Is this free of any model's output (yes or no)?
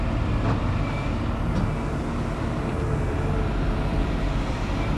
no